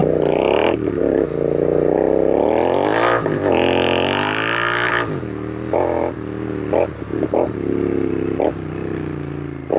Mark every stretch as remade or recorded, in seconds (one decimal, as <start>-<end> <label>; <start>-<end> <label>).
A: 0.0-9.8 recorded